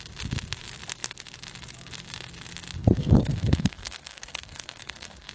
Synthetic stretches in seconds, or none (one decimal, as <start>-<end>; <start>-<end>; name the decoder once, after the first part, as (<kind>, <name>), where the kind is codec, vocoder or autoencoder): 2.8-5.3 (codec, SNAC)